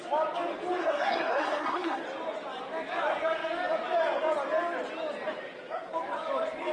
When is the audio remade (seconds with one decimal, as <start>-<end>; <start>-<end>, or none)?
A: 0.8-2.0